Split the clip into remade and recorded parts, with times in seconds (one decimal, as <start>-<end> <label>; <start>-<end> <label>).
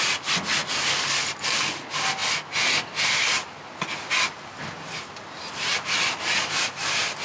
0.0-7.2 recorded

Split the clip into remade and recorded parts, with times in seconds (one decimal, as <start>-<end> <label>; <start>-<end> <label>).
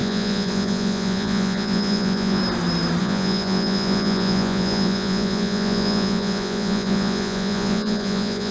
0.0-2.4 remade; 2.4-3.0 recorded; 3.0-8.5 remade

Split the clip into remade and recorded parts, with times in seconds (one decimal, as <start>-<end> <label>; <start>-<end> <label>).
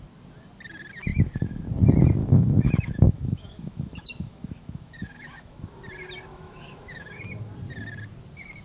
0.0-1.1 recorded; 1.1-1.7 remade; 1.7-2.2 recorded; 2.2-5.8 remade; 5.8-6.3 recorded; 6.3-7.2 remade; 7.2-8.6 recorded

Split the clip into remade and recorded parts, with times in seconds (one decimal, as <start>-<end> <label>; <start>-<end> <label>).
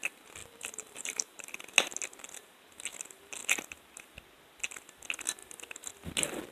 0.0-0.4 recorded; 0.4-1.5 remade; 1.5-6.5 recorded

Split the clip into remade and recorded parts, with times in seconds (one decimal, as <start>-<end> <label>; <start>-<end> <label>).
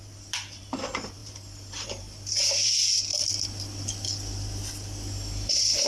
0.0-3.1 remade; 3.1-5.5 recorded; 5.5-5.9 remade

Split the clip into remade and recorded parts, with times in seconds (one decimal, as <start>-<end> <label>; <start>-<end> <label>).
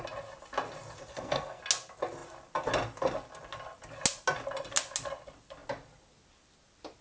0.0-1.1 recorded; 1.1-1.6 remade; 1.6-7.0 recorded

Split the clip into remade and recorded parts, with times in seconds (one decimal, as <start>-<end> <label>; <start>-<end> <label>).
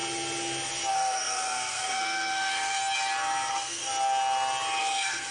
0.0-0.9 recorded; 0.9-2.8 remade; 2.8-3.5 recorded; 3.5-3.9 remade; 3.9-4.8 recorded; 4.8-5.3 remade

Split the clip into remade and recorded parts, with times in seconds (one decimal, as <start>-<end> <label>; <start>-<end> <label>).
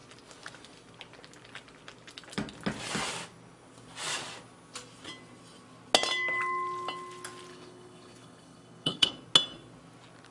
0.0-7.5 recorded; 7.5-9.1 remade; 9.1-10.3 recorded